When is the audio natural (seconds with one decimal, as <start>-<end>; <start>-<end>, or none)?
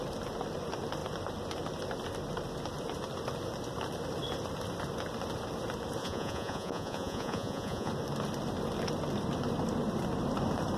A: 0.0-6.0; 7.9-10.8